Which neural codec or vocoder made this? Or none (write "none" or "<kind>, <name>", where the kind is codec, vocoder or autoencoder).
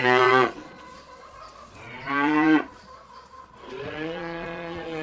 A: vocoder, Vocos